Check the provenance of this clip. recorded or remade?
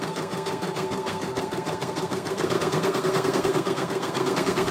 remade